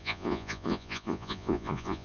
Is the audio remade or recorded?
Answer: remade